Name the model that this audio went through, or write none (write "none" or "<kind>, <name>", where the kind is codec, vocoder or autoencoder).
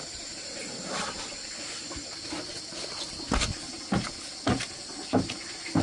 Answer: none